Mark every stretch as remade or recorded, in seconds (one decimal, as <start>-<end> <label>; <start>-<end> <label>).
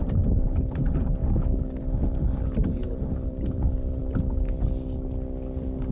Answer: 0.0-1.2 recorded; 1.2-1.8 remade; 1.8-5.9 recorded